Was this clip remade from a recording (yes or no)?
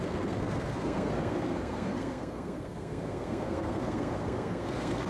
yes